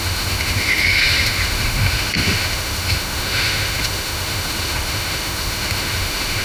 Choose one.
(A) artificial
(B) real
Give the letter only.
A